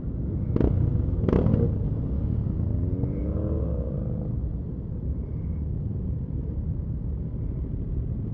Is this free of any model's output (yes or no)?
yes